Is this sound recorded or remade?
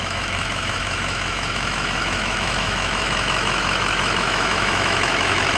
remade